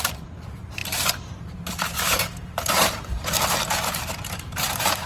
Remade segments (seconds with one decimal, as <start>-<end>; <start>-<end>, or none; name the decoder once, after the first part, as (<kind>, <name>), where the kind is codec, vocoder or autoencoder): 0.0-5.1 (vocoder, BigVGAN v2)